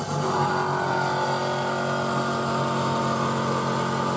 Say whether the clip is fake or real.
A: real